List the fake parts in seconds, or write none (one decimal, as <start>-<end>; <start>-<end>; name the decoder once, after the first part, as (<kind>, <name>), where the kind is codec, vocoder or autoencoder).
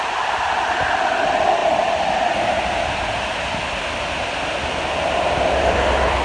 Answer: none